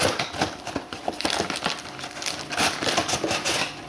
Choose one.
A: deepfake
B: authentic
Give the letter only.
B